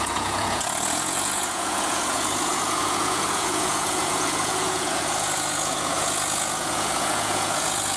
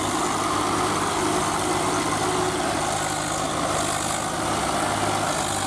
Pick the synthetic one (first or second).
first